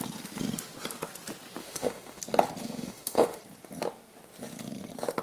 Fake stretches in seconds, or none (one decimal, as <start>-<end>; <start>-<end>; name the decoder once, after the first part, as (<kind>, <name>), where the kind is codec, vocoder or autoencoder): 1.6-2.2 (autoencoder, DAC-VAE); 2.6-3.4